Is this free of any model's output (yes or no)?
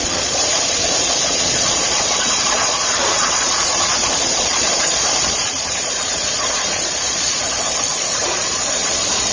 no